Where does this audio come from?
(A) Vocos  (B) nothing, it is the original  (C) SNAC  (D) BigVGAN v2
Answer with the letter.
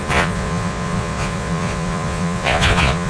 A